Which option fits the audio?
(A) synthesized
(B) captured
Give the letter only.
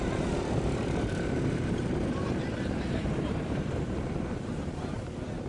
A